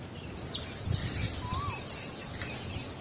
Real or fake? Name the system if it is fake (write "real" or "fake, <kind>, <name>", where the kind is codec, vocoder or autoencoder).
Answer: real